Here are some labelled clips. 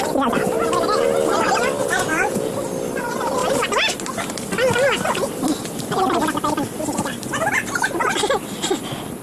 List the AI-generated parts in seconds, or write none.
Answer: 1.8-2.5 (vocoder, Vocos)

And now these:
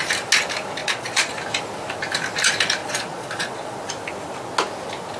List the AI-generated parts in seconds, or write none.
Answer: 0.8-1.3 (vocoder, Vocos); 2.8-3.8

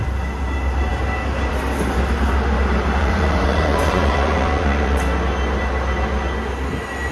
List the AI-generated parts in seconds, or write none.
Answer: 3.0-5.0 (vocoder, Vocos)

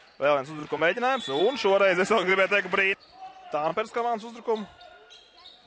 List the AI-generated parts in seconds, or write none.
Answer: 0.6-1.4 (vocoder, Vocos)

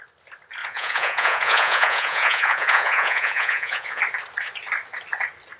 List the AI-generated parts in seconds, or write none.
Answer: 0.6-4.0 (vocoder, Vocos)

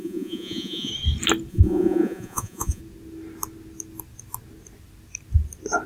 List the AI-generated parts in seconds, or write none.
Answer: 0.0-0.9 (vocoder, Vocos); 1.5-2.8